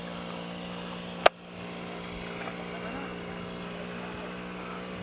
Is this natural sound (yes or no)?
yes